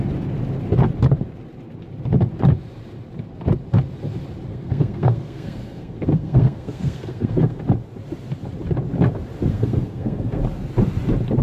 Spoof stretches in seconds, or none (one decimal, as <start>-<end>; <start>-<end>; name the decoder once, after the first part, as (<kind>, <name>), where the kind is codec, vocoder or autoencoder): 4.5-7.6 (codec, SNAC); 9.5-10.4